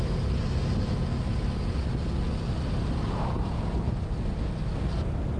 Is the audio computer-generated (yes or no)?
no